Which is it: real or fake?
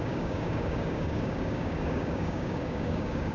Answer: fake